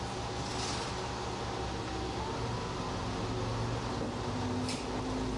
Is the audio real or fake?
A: real